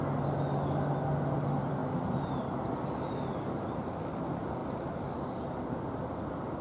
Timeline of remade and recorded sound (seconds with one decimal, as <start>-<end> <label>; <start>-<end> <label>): 0.0-6.6 recorded